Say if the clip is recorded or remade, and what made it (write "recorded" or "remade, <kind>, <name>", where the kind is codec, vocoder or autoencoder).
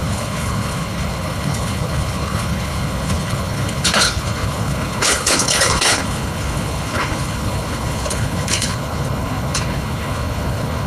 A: remade, codec, HILCodec